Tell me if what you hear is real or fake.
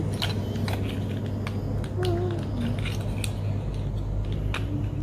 real